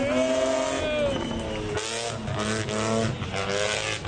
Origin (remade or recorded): recorded